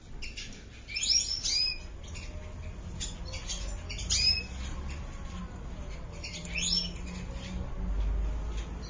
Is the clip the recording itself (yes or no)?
yes